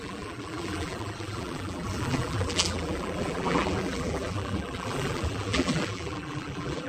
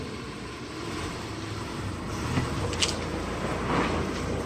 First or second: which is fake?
first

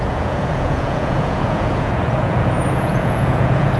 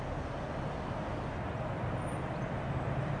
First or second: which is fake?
first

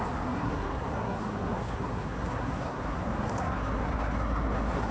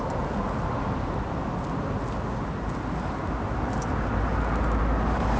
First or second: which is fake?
first